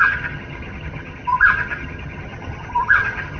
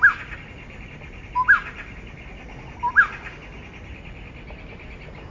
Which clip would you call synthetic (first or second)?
first